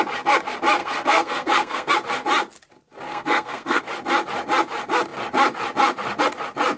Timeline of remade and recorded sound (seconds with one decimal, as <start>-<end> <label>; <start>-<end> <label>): 0.0-0.8 recorded; 0.8-1.9 remade; 1.9-3.1 recorded; 3.1-3.8 remade; 3.8-6.8 recorded